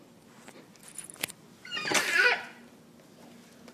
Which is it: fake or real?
real